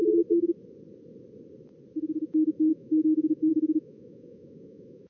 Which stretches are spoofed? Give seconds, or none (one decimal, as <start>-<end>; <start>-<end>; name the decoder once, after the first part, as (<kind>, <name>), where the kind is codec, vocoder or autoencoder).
2.7-5.1 (autoencoder, DAC-VAE)